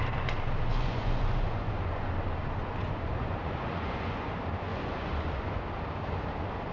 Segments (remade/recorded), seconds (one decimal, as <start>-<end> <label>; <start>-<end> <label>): 0.0-0.7 recorded; 0.7-2.1 remade; 2.1-2.8 recorded; 2.8-4.3 remade; 4.3-4.7 recorded; 4.7-5.6 remade; 5.6-6.7 recorded